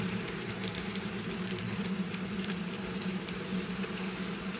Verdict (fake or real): fake